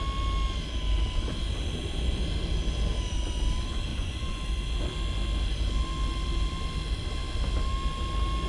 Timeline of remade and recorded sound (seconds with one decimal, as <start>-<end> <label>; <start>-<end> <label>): 0.0-3.9 recorded; 3.9-4.4 remade; 4.4-8.5 recorded